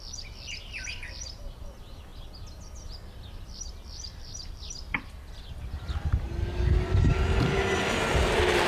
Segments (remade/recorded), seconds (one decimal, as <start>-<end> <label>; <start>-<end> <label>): 0.0-2.1 recorded; 2.1-5.6 remade; 5.6-8.7 recorded